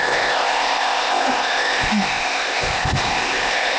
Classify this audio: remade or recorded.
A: remade